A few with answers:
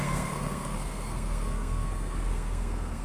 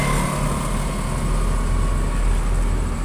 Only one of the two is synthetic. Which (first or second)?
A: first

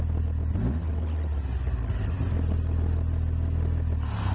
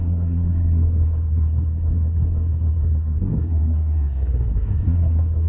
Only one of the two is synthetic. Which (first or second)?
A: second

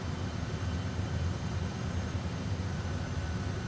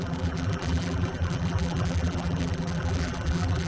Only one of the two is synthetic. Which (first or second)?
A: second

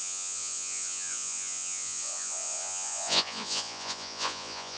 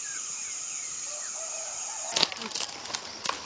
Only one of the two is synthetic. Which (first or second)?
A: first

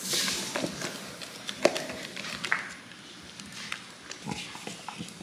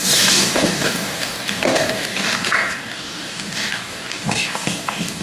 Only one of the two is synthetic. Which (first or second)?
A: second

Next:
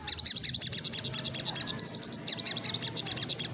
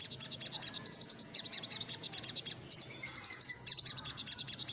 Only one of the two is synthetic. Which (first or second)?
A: second